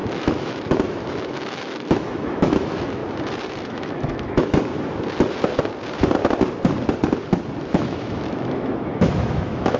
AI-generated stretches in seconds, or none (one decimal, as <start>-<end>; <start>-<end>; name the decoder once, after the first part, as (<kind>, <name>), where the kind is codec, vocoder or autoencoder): 0.0-3.0 (autoencoder, DAC-VAE); 3.5-4.7; 7.6-9.8